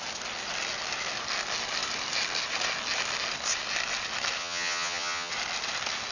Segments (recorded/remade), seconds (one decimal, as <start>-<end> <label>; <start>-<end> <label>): 0.0-4.4 recorded; 4.4-5.3 remade; 5.3-6.1 recorded